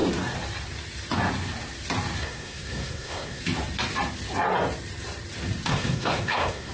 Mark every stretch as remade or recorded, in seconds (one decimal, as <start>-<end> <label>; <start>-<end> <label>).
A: 0.0-2.2 recorded; 2.2-3.4 remade; 3.4-5.7 recorded; 5.7-6.7 remade